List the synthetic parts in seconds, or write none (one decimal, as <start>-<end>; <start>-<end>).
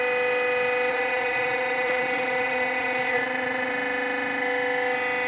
0.9-3.7